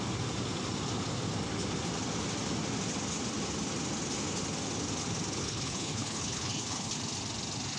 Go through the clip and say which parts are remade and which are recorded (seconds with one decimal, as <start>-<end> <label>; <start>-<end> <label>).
0.0-5.4 recorded; 5.4-6.9 remade; 6.9-7.8 recorded